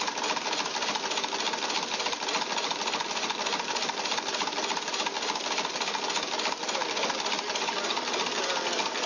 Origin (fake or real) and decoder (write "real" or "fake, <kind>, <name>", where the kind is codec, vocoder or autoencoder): real